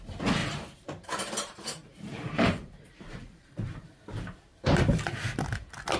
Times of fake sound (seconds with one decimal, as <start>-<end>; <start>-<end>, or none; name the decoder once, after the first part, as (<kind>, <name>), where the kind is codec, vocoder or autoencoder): 0.4-4.0 (vocoder, BigVGAN v2); 4.5-5.0